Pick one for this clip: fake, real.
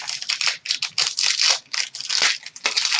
real